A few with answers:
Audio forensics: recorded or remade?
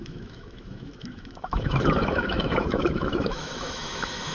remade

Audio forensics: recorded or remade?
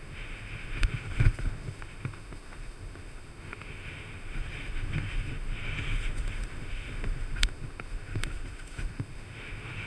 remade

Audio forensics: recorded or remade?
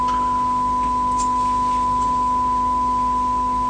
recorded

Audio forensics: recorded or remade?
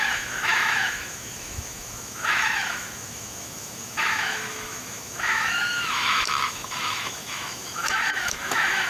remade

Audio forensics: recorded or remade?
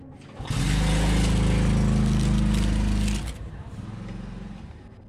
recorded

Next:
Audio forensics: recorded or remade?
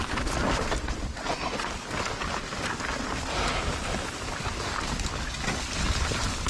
recorded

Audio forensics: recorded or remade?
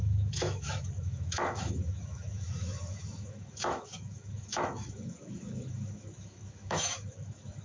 remade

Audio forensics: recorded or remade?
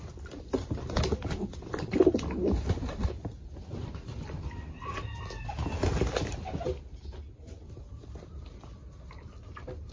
recorded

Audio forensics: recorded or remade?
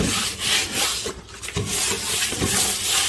recorded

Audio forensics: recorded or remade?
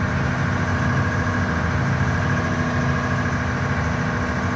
recorded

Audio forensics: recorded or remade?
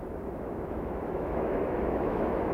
remade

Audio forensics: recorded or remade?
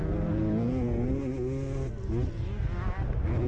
recorded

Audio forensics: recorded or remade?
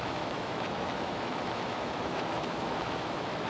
remade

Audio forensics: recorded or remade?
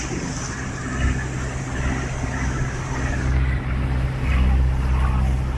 recorded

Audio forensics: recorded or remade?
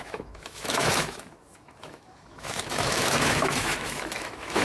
remade